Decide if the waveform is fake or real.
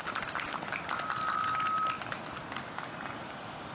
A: real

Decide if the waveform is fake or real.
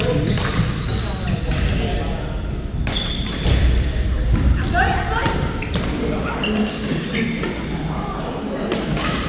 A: real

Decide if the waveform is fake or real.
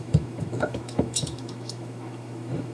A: fake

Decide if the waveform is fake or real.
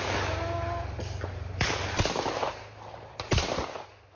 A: real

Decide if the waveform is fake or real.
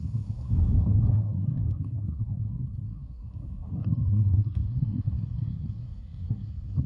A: fake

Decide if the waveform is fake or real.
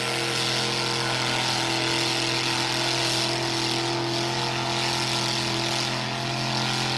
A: real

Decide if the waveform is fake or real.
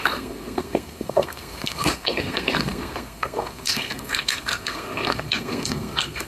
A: fake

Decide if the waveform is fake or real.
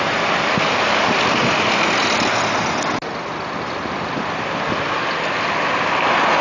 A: real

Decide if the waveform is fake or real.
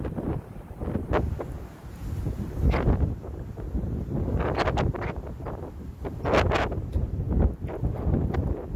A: real